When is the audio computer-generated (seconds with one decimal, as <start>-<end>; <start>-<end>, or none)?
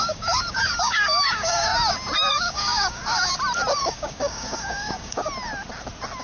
0.0-1.7; 2.3-3.0; 3.8-5.2